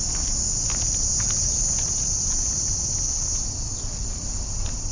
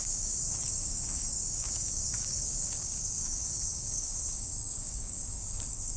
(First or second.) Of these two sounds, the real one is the first